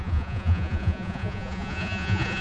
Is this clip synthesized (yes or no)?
yes